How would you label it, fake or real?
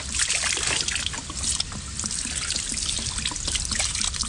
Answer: real